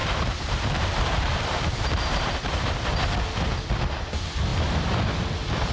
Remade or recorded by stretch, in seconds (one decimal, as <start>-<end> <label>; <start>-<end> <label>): 0.0-2.9 remade; 2.9-4.5 recorded; 4.5-5.1 remade; 5.1-5.7 recorded